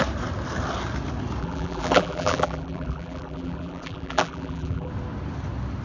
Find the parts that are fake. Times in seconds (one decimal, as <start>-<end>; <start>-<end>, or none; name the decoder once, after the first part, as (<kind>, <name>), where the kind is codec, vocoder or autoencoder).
1.4-4.9 (vocoder, BigVGAN v2)